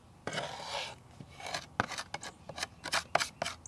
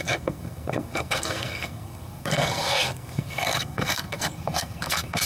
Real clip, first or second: first